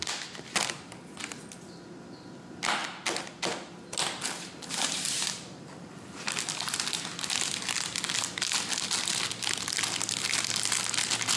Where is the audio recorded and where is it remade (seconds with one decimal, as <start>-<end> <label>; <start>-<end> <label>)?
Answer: 0.0-11.4 recorded